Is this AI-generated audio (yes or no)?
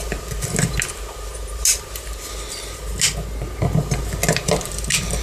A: no